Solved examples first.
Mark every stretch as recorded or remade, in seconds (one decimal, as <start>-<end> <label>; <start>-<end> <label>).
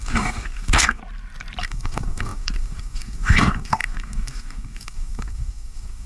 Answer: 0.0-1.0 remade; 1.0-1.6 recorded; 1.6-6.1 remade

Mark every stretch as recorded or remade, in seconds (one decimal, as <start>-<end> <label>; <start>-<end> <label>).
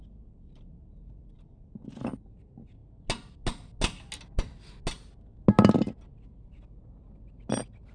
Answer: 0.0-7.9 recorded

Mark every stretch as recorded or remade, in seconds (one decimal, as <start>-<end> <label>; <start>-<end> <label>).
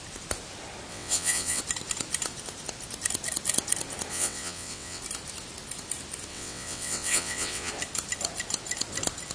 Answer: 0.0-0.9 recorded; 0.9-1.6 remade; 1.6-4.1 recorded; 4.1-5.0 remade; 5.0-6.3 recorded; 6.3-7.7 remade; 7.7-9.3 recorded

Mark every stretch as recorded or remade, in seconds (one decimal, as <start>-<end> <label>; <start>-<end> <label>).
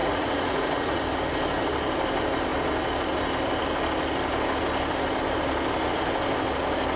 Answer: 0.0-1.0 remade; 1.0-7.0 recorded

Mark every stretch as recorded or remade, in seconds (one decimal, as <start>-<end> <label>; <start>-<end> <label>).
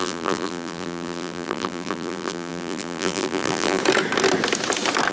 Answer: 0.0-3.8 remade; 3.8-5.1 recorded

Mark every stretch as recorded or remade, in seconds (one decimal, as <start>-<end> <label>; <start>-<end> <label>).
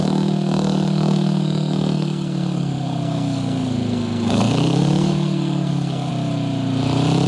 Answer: 0.0-6.1 remade; 6.1-7.3 recorded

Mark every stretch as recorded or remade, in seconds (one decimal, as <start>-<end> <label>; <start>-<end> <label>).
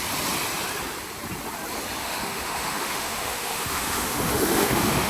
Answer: 0.0-2.0 recorded; 2.0-5.1 remade